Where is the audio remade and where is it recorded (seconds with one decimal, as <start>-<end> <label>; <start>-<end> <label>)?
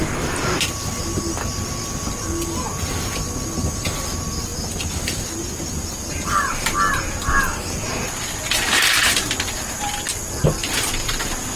0.0-11.6 recorded